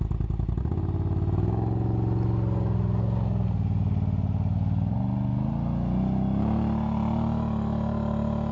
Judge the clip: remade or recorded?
recorded